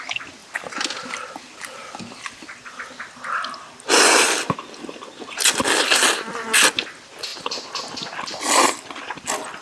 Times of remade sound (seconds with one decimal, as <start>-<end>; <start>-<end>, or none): none